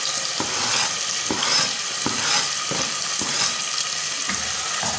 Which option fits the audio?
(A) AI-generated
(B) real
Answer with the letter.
A